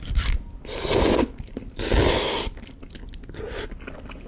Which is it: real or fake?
real